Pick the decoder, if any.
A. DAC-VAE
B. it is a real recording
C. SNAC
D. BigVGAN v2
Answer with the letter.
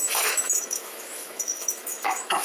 A